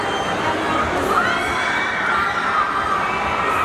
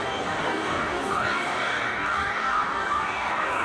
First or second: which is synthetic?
second